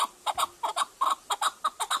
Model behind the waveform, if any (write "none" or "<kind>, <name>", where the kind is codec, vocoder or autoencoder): none